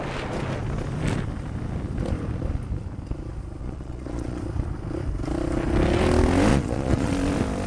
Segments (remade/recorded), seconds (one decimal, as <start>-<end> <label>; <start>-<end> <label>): 0.0-3.6 recorded; 3.6-4.4 remade; 4.4-6.5 recorded; 6.5-7.1 remade; 7.1-7.7 recorded